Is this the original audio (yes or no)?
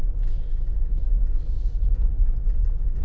yes